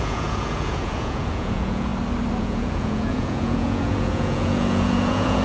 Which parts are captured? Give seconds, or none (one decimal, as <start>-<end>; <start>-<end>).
1.9-2.4